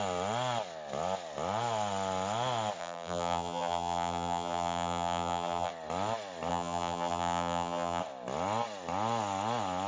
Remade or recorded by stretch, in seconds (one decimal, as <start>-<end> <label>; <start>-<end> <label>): 0.0-2.8 recorded; 2.8-5.7 remade; 5.7-6.5 recorded; 6.5-8.0 remade; 8.0-9.9 recorded